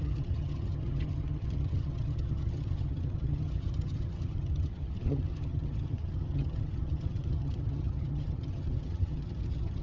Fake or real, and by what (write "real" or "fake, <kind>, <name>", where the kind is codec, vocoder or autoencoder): fake, vocoder, HiFi-GAN